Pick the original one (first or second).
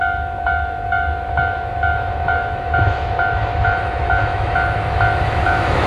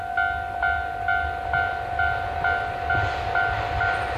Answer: second